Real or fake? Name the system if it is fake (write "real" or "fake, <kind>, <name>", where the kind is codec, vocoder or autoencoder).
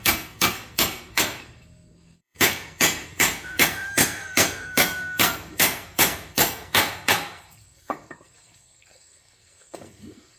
fake, codec, SNAC